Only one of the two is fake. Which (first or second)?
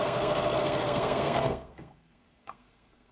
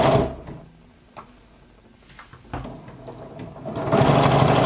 first